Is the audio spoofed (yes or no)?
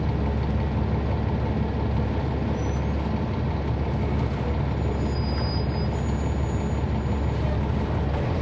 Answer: no